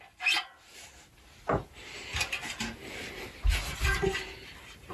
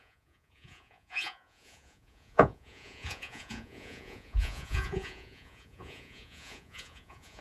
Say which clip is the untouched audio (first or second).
first